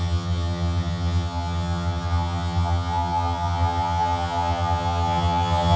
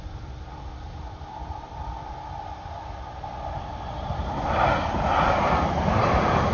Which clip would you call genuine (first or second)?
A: second